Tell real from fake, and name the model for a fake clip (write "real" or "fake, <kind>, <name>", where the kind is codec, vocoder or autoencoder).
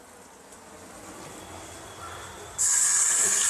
real